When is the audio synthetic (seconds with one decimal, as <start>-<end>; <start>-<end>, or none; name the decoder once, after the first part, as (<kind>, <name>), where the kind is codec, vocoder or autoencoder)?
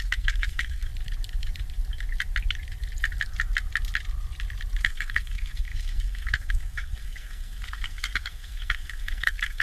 0.0-0.9 (codec, SNAC); 4.8-9.6